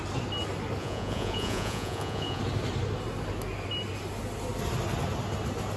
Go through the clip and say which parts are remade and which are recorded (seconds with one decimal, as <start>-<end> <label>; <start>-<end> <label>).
0.0-0.8 recorded; 0.8-2.4 remade; 2.4-5.8 recorded